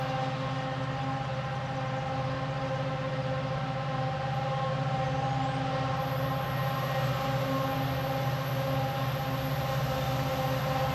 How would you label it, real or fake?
real